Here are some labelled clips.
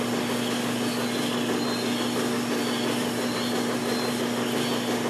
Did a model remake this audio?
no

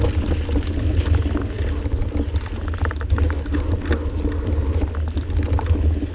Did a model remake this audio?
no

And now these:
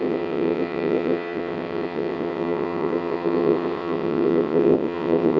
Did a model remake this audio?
yes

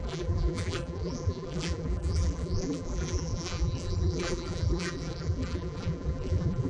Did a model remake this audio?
yes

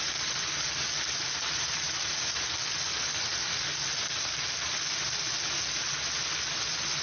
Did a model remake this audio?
no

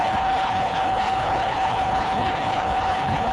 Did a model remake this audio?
yes